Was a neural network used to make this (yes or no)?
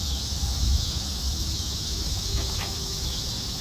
yes